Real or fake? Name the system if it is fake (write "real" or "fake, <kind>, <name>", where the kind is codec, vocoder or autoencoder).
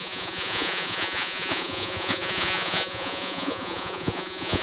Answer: fake, vocoder, Vocos